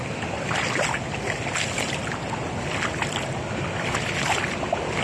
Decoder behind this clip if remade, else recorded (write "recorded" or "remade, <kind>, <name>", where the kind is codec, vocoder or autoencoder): recorded